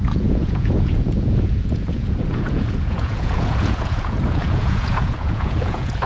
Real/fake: fake